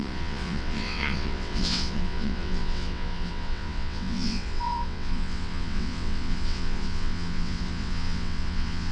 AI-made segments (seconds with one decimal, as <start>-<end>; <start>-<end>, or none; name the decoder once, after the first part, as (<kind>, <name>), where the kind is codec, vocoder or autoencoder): 0.0-8.9 (vocoder, WaveNeXt)